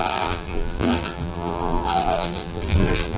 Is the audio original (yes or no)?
no